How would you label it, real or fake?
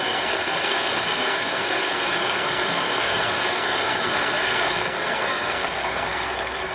fake